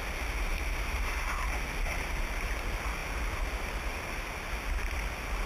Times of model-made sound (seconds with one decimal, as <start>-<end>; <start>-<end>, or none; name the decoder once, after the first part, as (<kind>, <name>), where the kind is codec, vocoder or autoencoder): 0.5-1.5 (vocoder, BigVGAN v2); 3.0-4.5